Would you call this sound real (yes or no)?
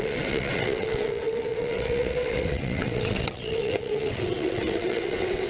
no